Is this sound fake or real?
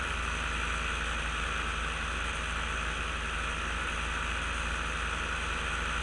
real